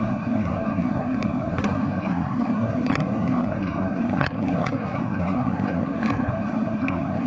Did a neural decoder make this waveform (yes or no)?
yes